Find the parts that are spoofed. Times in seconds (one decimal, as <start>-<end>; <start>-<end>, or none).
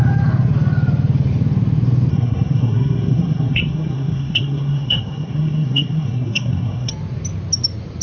2.1-6.9